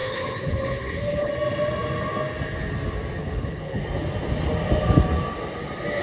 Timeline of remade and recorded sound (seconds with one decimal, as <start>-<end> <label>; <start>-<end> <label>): 0.0-1.3 remade; 1.3-3.2 recorded; 3.2-3.8 remade; 3.8-6.0 recorded